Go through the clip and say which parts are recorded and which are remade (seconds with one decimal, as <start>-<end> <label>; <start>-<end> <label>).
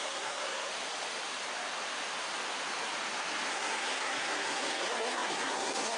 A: 0.0-0.7 remade; 0.7-3.5 recorded; 3.5-6.0 remade